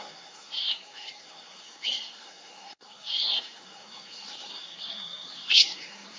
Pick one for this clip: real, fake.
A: fake